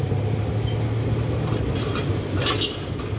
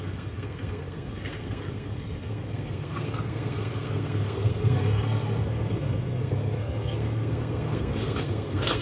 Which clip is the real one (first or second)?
first